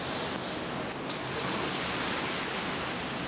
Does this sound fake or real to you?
real